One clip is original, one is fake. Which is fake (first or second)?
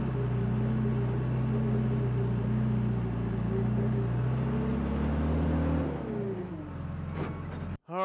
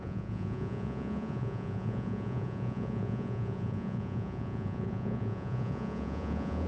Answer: second